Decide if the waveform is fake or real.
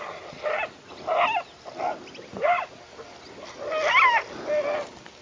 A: real